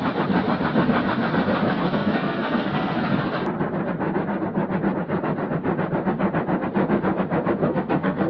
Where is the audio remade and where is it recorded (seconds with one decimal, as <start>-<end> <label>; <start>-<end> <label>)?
0.0-1.6 recorded; 1.6-3.2 remade; 3.2-7.6 recorded; 7.6-8.3 remade